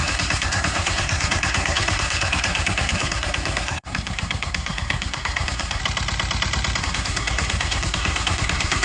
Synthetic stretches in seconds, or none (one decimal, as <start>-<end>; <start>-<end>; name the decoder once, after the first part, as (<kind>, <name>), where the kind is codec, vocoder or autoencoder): 0.0-5.8 (codec, SNAC); 6.8-8.8